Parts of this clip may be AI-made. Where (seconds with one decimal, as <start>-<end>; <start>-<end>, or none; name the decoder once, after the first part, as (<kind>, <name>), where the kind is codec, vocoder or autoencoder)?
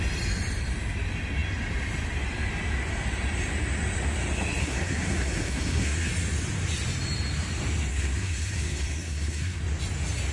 4.6-6.1 (codec, SNAC); 7.9-9.6